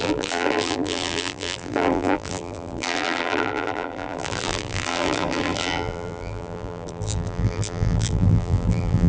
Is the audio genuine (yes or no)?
no